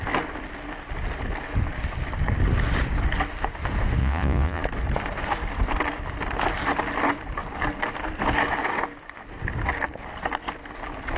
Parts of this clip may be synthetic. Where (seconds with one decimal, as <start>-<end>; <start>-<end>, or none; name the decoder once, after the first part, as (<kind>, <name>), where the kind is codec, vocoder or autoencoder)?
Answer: 4.0-4.6 (vocoder, Vocos)